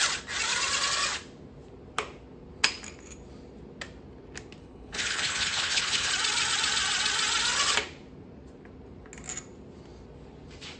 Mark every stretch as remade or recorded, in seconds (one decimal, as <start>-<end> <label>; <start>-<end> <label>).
0.0-4.6 recorded; 4.6-6.1 remade; 6.1-10.8 recorded